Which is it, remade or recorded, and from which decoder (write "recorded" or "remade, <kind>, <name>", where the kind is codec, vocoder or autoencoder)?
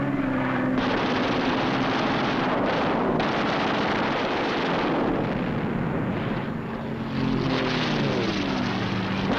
recorded